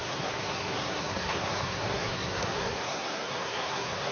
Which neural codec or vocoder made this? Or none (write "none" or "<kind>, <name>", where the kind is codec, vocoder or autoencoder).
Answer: codec, SNAC